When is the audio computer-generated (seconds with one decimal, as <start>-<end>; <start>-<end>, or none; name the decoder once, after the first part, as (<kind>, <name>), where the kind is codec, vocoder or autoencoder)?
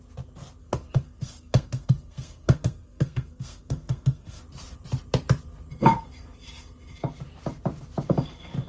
0.6-4.4 (codec, SNAC)